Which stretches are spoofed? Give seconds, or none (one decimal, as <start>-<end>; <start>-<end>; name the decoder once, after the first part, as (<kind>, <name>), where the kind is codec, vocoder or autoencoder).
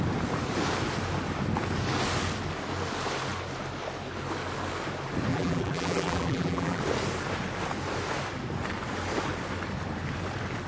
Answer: 5.3-6.8 (vocoder, BigVGAN v2)